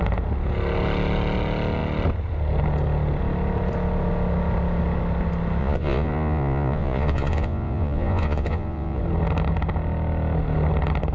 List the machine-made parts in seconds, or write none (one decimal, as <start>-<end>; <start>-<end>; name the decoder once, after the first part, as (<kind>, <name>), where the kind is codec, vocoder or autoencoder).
5.6-9.0 (vocoder, Vocos)